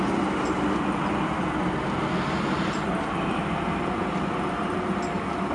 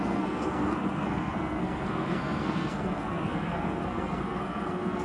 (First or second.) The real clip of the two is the first